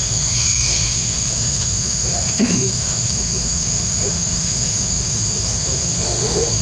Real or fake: fake